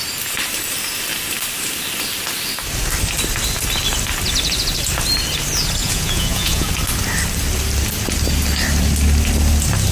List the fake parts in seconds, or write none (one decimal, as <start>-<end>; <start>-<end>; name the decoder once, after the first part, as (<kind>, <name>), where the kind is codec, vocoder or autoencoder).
5.8-6.7 (vocoder, Vocos)